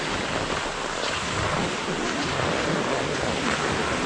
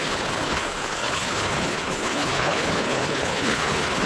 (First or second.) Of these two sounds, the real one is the first